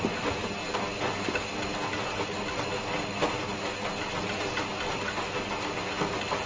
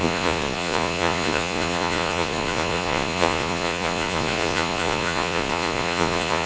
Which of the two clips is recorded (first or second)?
first